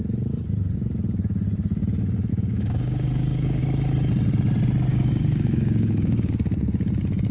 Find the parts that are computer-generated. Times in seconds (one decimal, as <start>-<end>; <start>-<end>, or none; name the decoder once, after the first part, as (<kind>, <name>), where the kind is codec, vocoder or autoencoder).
2.3-3.6 (codec, DAC); 4.9-6.3